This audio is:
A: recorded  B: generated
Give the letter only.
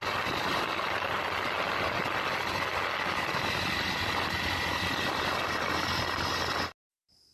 A